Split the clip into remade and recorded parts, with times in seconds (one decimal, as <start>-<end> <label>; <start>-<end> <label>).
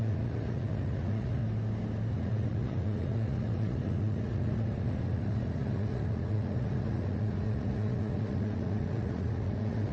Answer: 0.0-1.4 remade; 1.4-2.1 recorded; 2.1-9.9 remade